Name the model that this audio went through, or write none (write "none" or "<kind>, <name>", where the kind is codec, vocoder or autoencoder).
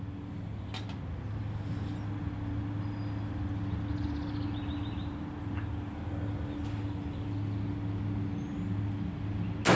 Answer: none